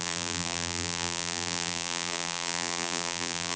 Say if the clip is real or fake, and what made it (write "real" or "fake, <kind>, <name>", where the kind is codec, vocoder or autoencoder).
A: fake, vocoder, BigVGAN v2